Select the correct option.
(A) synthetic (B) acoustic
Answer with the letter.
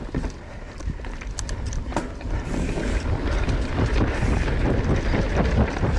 B